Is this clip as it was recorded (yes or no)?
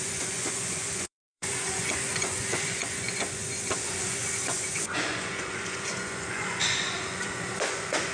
no